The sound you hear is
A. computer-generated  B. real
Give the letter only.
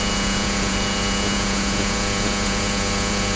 A